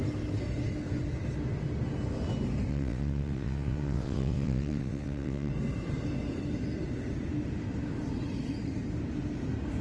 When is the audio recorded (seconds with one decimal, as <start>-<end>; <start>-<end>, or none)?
0.0-2.7; 5.5-9.8